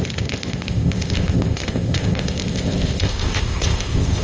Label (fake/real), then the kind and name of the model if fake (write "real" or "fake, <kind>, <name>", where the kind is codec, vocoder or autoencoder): fake, codec, ZipCodec